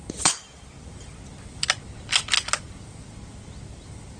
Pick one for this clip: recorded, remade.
recorded